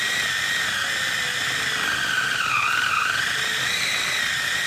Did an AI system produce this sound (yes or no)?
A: no